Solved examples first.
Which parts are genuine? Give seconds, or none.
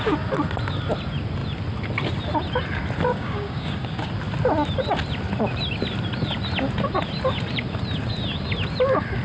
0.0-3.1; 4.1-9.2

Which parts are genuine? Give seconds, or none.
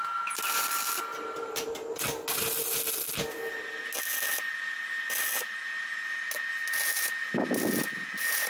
0.0-1.1; 2.0-8.5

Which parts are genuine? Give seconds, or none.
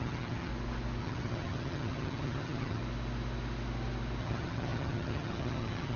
0.5-1.0; 2.8-4.2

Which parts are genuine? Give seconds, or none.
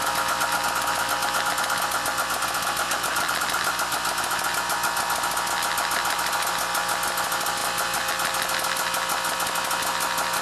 0.0-10.4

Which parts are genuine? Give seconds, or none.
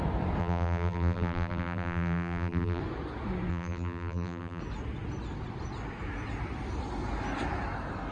0.0-0.4; 2.8-3.5; 4.6-8.1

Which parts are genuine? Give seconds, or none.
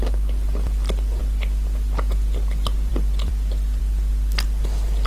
1.2-2.9; 3.3-3.8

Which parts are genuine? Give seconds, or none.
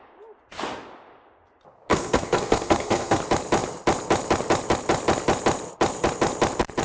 0.0-1.9; 3.2-6.8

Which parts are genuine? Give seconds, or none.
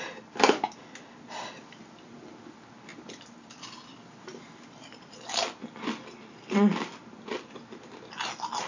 0.0-8.7